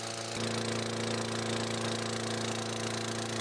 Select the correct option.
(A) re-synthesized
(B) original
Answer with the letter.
B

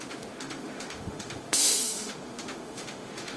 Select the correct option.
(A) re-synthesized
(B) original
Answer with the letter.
A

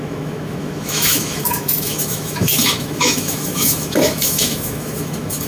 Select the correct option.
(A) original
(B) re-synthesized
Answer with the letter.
B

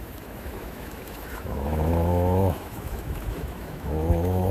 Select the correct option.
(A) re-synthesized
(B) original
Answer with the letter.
A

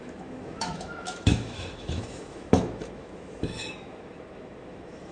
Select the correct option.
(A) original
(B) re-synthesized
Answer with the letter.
B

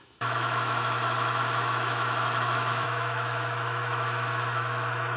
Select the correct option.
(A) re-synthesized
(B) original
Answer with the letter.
A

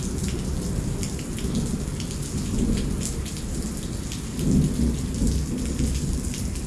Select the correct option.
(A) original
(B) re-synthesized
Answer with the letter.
A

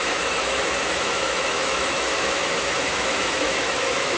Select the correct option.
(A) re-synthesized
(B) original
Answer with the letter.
A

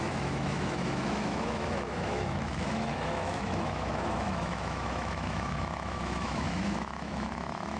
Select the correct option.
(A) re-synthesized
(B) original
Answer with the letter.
A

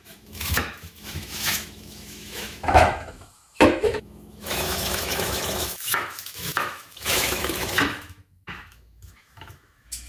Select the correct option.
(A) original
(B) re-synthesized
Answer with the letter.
B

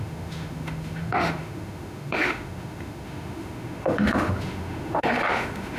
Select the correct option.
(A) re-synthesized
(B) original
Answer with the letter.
A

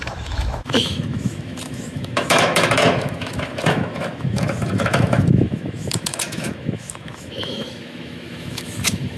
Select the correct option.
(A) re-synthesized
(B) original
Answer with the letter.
A